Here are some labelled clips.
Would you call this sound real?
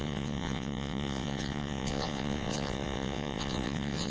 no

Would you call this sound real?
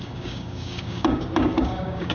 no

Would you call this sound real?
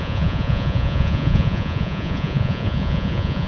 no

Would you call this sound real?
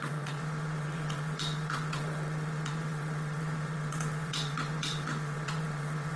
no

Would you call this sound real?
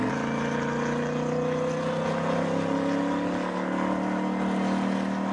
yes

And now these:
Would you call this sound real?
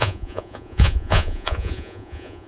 no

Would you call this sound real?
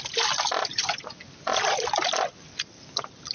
yes